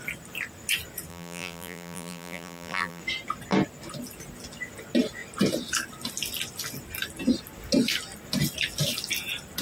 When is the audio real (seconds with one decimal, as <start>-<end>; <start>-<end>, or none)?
0.0-1.1; 3.0-9.6